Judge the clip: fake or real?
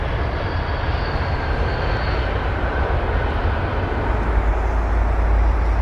real